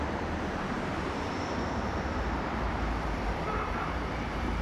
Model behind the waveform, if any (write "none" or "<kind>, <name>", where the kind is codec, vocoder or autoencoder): vocoder, BigVGAN v2